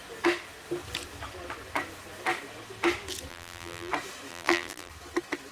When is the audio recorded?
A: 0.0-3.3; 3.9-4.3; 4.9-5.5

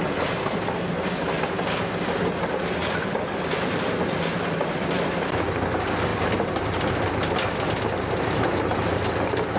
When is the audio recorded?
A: 0.0-9.6

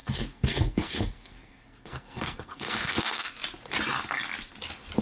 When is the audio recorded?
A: 3.4-5.0

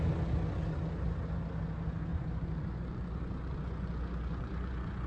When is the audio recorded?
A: 0.0-2.1

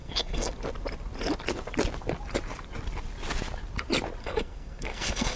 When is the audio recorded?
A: 0.5-4.2

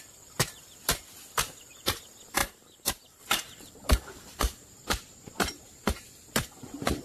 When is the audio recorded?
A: 5.1-5.8

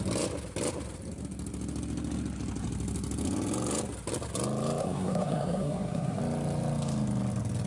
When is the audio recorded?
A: 0.0-4.8; 6.2-7.7

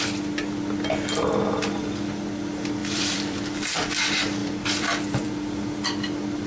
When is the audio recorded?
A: 0.0-2.8; 3.4-4.4; 5.3-6.5